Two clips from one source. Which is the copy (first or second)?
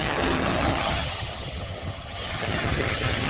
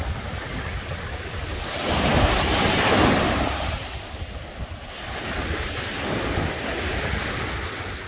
first